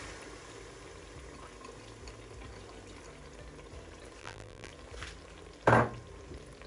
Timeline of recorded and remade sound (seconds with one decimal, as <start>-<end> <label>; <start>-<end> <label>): 0.0-4.2 recorded; 4.2-4.7 remade; 4.7-6.7 recorded